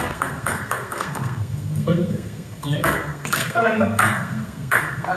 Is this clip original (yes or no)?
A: no